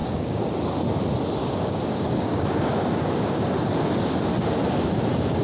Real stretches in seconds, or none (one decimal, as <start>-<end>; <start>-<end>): 0.5-1.4; 3.5-5.4